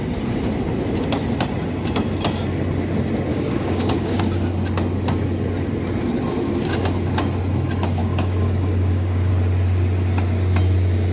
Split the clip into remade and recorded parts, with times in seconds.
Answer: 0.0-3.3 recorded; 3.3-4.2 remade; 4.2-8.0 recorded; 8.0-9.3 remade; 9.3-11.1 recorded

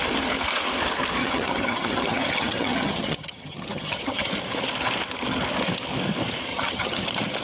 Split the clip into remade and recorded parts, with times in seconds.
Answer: 0.0-1.2 recorded; 1.2-4.3 remade; 4.3-6.5 recorded; 6.5-7.0 remade; 7.0-7.4 recorded

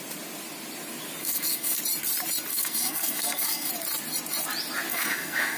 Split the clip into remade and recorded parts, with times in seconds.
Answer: 0.0-1.2 recorded; 1.2-1.8 remade; 1.8-2.5 recorded; 2.5-3.7 remade; 3.7-4.9 recorded; 4.9-5.6 remade